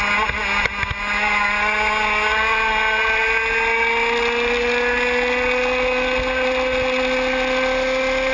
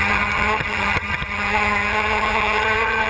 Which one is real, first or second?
first